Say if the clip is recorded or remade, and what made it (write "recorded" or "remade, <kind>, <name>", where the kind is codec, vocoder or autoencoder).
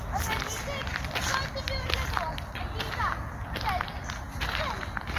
recorded